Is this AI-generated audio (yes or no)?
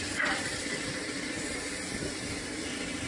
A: yes